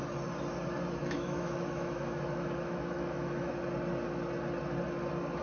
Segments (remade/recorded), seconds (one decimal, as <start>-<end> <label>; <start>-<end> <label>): 0.0-1.0 recorded; 1.0-3.5 remade; 3.5-5.4 recorded